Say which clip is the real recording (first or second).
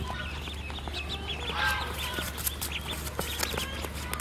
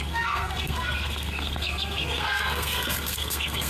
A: first